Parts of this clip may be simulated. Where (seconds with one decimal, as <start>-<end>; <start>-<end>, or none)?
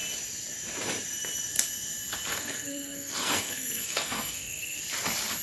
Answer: 2.3-4.8